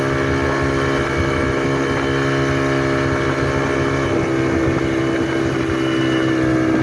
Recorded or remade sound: recorded